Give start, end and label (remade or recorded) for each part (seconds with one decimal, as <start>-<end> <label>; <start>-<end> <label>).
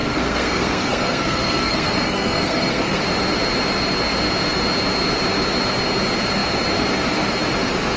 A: 0.0-3.0 remade; 3.0-8.0 recorded